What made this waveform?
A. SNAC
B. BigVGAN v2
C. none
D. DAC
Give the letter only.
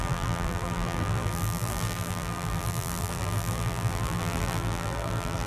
B